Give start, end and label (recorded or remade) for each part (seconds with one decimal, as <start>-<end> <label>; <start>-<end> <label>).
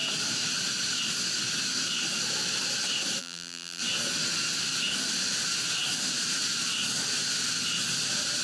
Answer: 0.0-3.2 recorded; 3.2-3.8 remade; 3.8-8.4 recorded